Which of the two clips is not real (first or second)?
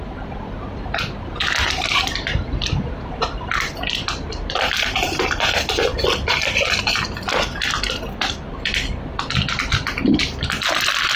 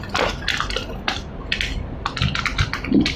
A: first